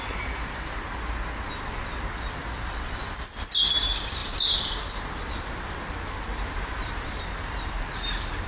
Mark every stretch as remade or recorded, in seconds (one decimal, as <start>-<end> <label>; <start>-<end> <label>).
0.0-2.4 recorded; 2.4-3.0 remade; 3.0-4.2 recorded; 4.2-7.8 remade; 7.8-8.5 recorded

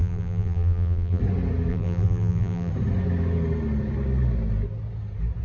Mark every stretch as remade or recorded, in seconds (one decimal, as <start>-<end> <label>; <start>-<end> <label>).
0.0-1.2 remade; 1.2-1.7 recorded; 1.7-2.7 remade; 2.7-5.4 recorded

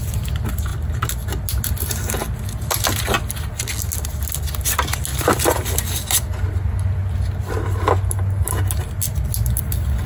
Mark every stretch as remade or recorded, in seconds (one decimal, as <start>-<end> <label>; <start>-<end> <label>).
0.0-10.1 recorded

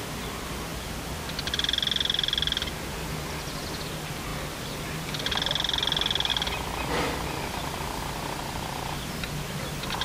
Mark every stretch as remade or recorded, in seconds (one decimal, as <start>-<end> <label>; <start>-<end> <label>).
0.0-4.3 recorded; 4.3-5.2 remade; 5.2-10.0 recorded

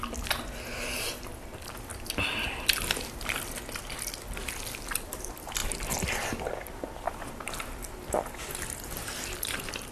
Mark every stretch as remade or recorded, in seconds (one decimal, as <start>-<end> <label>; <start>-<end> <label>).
0.0-1.9 recorded; 1.9-3.5 remade; 3.5-5.6 recorded; 5.6-7.2 remade; 7.2-9.9 recorded

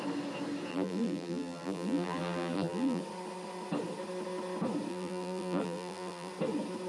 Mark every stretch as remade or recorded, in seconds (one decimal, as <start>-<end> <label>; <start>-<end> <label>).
0.0-0.7 recorded; 0.7-3.0 remade; 3.0-4.9 recorded; 4.9-6.3 remade; 6.3-6.9 recorded

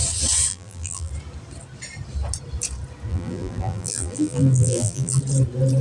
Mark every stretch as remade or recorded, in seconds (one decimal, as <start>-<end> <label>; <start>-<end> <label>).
0.0-0.5 recorded; 0.5-1.1 remade; 1.1-3.1 recorded; 3.1-5.2 remade; 5.2-5.8 recorded

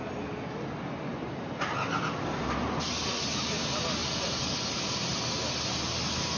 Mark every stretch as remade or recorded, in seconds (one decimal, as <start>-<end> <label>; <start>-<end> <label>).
0.0-6.4 recorded